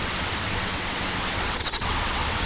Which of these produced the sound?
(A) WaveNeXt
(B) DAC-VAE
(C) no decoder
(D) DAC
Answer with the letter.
A